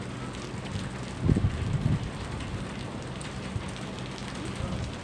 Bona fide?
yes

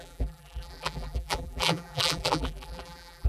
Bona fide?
no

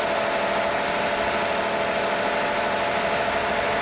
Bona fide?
no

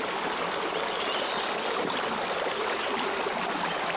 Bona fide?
yes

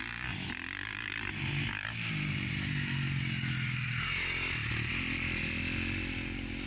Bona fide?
yes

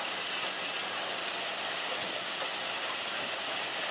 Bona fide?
yes